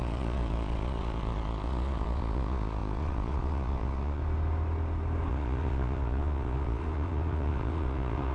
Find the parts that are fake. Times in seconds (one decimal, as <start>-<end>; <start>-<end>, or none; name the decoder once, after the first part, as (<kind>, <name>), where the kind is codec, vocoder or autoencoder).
0.0-4.2 (vocoder, Vocos); 5.3-8.3